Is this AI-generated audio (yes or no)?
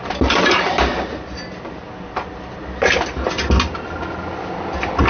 no